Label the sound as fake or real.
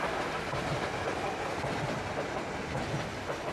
real